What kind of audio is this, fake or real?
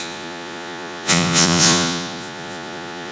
fake